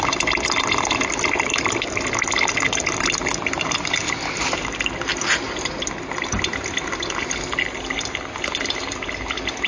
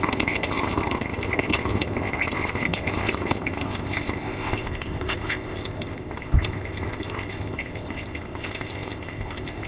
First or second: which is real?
first